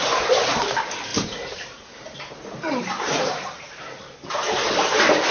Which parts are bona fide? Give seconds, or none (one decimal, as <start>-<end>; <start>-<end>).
0.0-1.1; 4.3-5.3